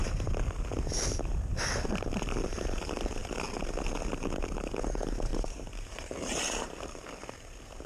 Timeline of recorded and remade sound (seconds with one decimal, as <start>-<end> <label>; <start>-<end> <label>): 0.0-5.3 recorded; 5.3-7.0 remade; 7.0-7.9 recorded